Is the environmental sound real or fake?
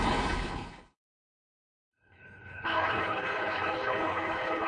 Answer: fake